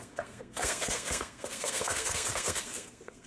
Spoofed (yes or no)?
yes